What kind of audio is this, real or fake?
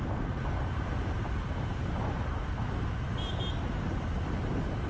real